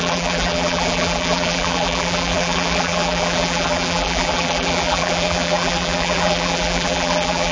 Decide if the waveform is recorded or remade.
remade